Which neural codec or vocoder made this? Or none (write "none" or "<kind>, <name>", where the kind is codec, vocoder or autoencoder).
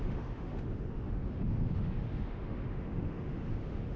autoencoder, DAC-VAE